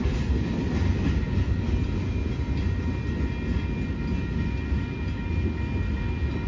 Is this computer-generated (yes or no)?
no